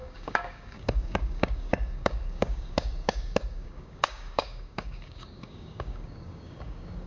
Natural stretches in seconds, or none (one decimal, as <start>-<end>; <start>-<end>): none